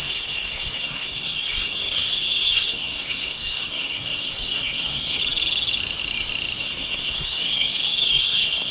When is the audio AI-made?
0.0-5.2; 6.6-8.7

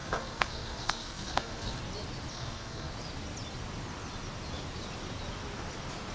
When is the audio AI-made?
0.0-1.8; 2.3-2.9

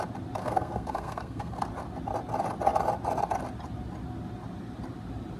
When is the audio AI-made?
0.4-1.6

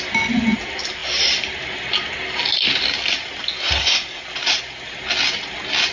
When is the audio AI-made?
3.6-4.2

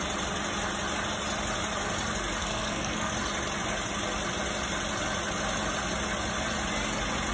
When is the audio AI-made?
2.4-3.1

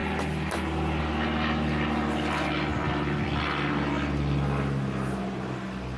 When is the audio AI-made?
none

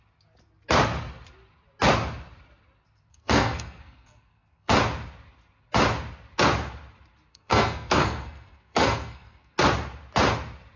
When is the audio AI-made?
3.1-4.7; 7.3-9.5